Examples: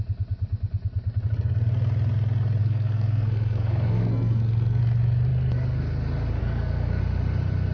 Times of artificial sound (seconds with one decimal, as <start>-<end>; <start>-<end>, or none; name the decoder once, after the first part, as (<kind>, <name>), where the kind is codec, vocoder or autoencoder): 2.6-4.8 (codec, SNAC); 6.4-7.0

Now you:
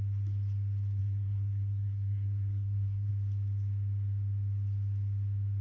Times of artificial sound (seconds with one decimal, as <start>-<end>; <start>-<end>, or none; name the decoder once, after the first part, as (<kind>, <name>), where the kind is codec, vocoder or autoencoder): 1.0-3.1 (codec, SNAC)

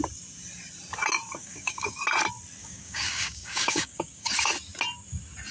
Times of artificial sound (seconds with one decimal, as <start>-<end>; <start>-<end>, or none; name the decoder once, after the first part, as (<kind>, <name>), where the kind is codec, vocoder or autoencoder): 1.4-2.0 (codec, DAC); 2.6-4.3

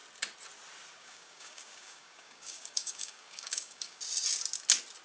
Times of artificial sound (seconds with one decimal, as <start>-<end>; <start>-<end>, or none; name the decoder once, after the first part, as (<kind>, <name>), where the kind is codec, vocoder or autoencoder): 1.0-4.0 (codec, DAC)

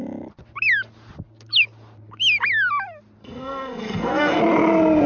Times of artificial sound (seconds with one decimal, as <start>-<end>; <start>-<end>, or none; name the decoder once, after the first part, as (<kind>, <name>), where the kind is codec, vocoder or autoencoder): 3.2-4.4 (codec, SNAC)

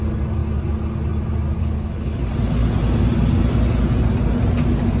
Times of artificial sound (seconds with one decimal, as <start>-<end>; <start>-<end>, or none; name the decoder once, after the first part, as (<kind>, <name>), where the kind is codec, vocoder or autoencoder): 1.6-2.2 (codec, HILCodec)